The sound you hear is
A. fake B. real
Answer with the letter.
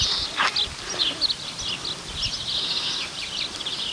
B